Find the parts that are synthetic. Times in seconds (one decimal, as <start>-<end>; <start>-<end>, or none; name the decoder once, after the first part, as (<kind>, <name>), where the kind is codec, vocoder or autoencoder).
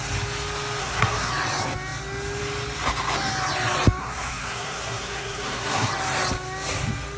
0.8-1.3 (codec, SNAC); 4.0-5.9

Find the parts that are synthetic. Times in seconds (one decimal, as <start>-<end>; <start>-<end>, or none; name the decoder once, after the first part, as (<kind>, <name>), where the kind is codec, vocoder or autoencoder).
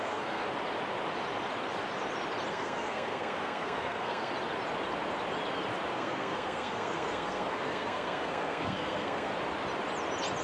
0.0-0.4 (codec, SNAC); 2.5-4.3; 5.9-9.3